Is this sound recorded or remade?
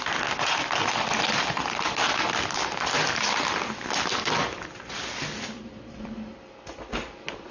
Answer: recorded